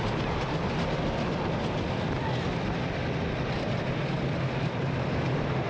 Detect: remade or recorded recorded